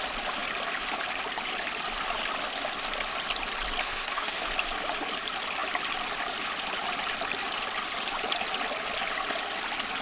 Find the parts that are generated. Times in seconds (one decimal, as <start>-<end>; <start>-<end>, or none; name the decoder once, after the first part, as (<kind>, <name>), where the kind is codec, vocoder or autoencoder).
3.8-4.5 (codec, SNAC)

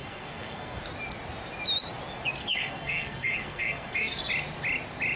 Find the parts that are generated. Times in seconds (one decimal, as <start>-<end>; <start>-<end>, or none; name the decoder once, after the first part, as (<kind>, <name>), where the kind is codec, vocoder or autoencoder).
0.0-0.8 (codec, SNAC); 2.4-4.3

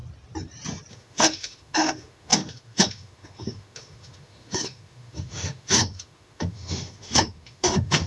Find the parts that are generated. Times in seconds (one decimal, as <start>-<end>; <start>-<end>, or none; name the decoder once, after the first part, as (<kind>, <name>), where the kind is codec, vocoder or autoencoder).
0.9-8.1 (autoencoder, DAC-VAE)

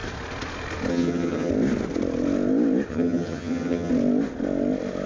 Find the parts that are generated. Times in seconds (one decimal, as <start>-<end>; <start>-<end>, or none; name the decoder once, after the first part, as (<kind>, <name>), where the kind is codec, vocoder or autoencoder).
0.9-1.5 (vocoder, HiFi-GAN); 2.9-3.9

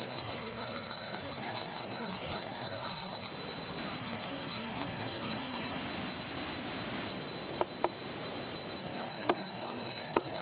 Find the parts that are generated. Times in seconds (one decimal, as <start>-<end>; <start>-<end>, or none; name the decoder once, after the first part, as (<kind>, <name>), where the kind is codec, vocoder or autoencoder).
0.0-3.3 (codec, SNAC); 4.0-5.8; 8.8-10.4